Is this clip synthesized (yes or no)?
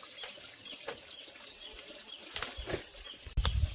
no